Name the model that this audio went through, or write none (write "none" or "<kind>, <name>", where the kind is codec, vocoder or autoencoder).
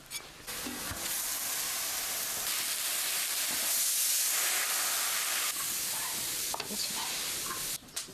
none